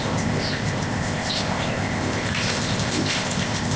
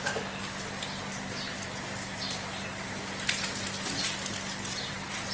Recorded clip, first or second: second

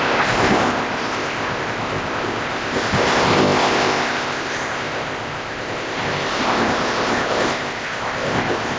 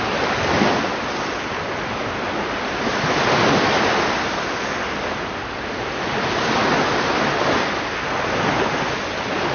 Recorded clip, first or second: second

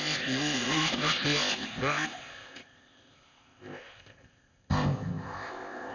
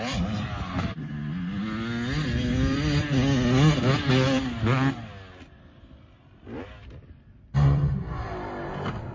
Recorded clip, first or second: second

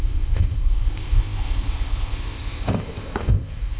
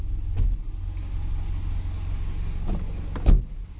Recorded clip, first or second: second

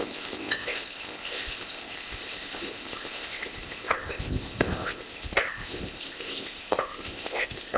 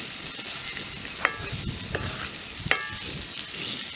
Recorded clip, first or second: second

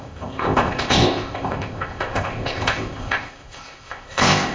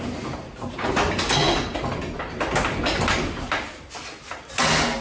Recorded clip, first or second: second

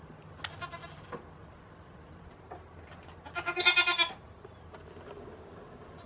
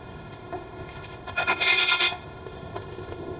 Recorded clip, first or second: first